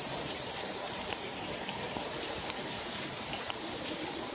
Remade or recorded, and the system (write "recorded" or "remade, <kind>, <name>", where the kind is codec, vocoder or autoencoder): remade, vocoder, BigVGAN v2